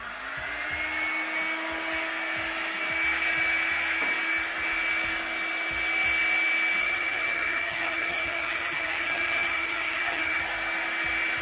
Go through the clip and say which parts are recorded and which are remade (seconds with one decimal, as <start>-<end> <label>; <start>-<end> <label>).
0.0-6.8 recorded; 6.8-10.4 remade; 10.4-11.4 recorded

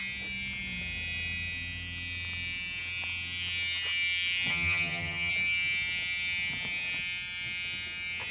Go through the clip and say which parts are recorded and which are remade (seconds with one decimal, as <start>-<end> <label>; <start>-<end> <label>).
0.0-4.5 recorded; 4.5-5.3 remade; 5.3-8.3 recorded

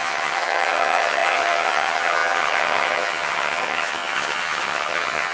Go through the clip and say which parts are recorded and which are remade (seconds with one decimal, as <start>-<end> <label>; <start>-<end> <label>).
0.0-5.3 remade